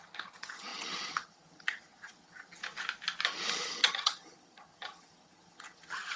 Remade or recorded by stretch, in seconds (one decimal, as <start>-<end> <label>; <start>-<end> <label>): 0.0-2.6 remade; 2.6-3.5 recorded; 3.5-6.2 remade